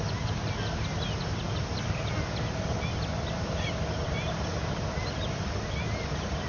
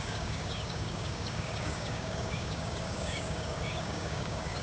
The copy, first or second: second